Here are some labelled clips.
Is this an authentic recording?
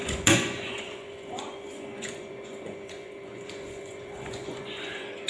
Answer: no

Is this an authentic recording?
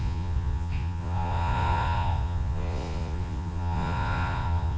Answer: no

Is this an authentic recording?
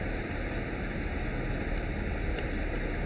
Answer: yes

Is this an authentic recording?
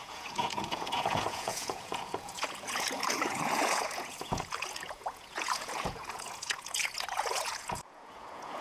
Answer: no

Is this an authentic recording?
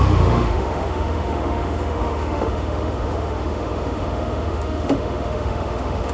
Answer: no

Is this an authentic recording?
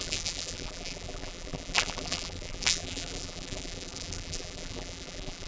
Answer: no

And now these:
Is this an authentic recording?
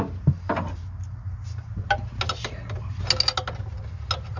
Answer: yes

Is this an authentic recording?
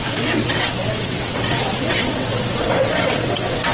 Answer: no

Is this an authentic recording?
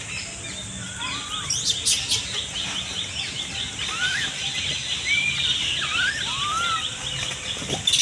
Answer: yes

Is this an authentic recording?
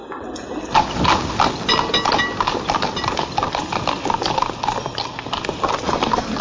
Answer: yes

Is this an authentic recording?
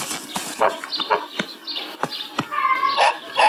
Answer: yes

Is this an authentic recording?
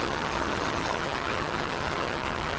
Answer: no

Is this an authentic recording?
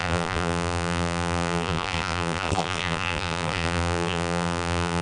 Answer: no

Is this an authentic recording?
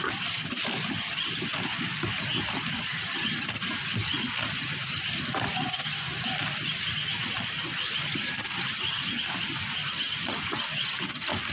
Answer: no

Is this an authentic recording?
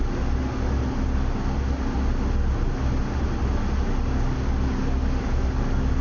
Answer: yes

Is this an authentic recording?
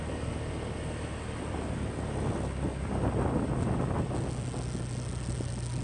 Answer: yes